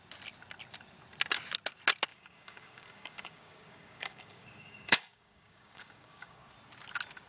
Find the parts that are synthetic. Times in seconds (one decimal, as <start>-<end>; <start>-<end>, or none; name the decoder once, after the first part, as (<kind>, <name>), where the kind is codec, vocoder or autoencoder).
2.1-6.5 (codec, DAC)